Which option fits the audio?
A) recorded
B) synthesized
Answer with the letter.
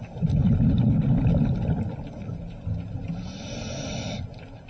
A